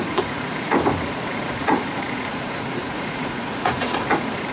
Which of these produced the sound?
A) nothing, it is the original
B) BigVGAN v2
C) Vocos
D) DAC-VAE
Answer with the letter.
C